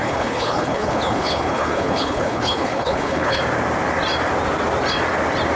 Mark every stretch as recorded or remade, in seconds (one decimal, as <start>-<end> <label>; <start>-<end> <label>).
0.0-3.4 remade; 3.4-5.6 recorded